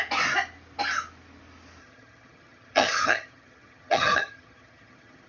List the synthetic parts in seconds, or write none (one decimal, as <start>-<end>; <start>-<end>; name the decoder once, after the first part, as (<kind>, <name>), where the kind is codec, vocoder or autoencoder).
1.8-5.3 (vocoder, HiFi-GAN)